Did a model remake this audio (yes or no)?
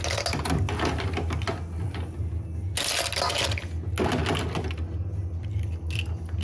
no